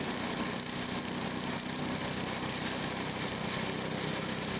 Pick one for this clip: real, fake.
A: real